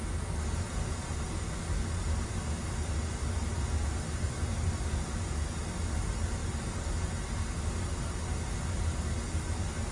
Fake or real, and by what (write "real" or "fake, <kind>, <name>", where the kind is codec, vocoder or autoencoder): real